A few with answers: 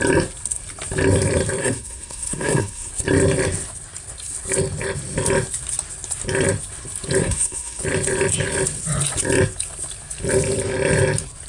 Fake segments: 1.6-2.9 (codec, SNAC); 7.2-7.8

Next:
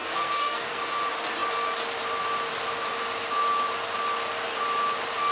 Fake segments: 0.0-0.8 (codec, SNAC)

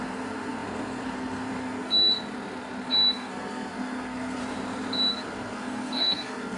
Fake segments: 0.0-2.1 (codec, SNAC); 2.9-4.4; 5.1-6.6

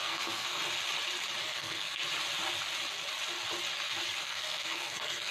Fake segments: 0.0-0.6 (codec, SNAC); 1.4-2.0; 4.2-5.3

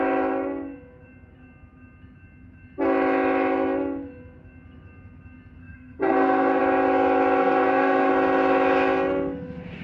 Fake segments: 5.6-6.6 (codec, SNAC); 7.4-8.1

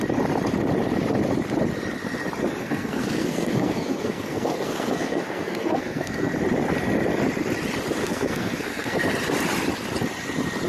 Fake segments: 2.6-6.3 (codec, SNAC); 8.0-9.0

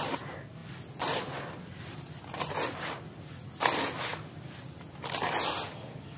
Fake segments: none

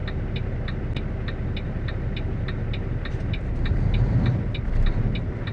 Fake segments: none